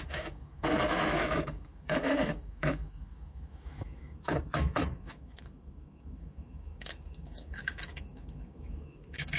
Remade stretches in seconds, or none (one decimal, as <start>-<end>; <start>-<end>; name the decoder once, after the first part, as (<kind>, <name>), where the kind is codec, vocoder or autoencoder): 0.0-9.4 (autoencoder, DAC-VAE)